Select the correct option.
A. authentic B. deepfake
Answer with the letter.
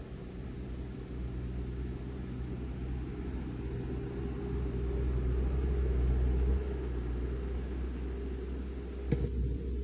A